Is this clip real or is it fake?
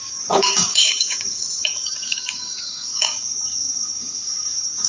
fake